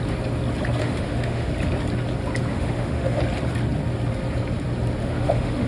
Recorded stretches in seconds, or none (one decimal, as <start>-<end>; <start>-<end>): 0.0-0.8; 1.5-2.5; 3.2-5.0